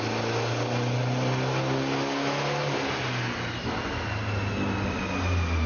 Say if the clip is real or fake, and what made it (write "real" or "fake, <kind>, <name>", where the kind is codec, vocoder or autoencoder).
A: real